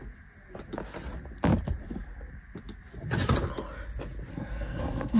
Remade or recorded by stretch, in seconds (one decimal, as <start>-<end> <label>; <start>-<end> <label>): 0.0-4.3 recorded; 4.3-5.2 remade